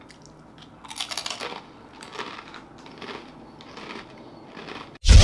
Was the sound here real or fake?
real